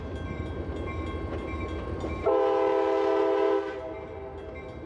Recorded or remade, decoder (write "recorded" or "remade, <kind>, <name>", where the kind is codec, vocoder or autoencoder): recorded